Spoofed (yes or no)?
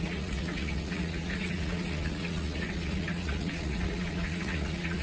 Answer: yes